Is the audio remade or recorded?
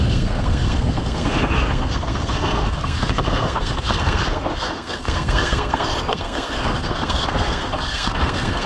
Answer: remade